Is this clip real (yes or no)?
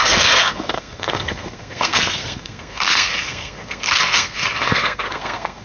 no